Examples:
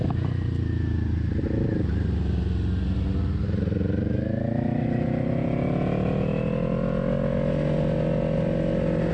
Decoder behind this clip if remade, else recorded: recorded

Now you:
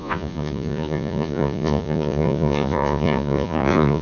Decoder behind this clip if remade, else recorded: remade, vocoder, Vocos